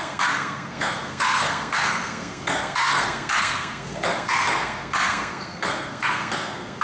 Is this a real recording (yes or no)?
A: no